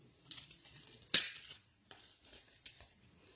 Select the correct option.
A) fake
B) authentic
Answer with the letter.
A